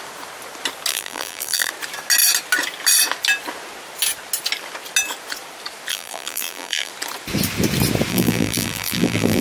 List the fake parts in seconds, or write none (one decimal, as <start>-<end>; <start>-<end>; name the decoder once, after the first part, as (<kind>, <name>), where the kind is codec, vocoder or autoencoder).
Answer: 0.9-1.7 (vocoder, BigVGAN v2); 5.9-6.9; 8.1-9.4